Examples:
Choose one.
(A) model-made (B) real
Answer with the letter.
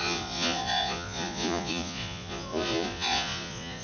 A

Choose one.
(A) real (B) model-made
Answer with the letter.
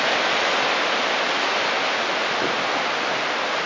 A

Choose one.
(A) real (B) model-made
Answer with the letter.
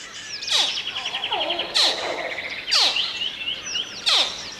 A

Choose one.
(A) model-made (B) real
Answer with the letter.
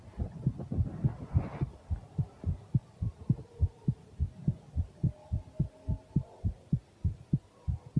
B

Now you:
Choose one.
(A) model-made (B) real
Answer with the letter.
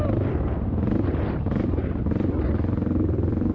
B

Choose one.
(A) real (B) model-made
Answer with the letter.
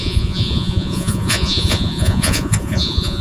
B